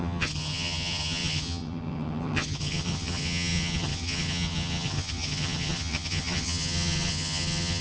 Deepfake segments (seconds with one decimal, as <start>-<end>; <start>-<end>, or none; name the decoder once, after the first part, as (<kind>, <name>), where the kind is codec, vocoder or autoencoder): 0.0-7.8 (vocoder, HiFi-GAN)